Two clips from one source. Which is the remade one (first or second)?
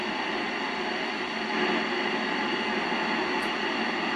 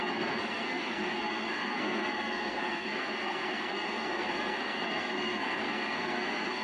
second